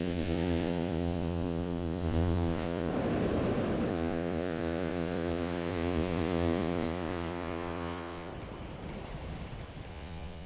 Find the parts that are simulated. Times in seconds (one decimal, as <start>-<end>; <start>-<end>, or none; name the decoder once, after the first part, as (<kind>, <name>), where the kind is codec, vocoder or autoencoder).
0.0-2.9 (vocoder, Vocos); 3.9-8.3; 9.9-10.5